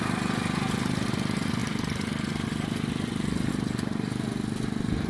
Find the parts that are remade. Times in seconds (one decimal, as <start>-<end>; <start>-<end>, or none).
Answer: none